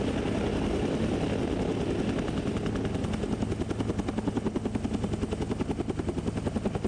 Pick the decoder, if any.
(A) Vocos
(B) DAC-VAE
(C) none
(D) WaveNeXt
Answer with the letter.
C